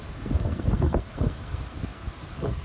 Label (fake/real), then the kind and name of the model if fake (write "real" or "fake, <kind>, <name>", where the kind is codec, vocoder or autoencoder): fake, codec, SNAC